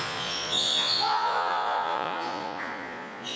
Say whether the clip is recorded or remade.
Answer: remade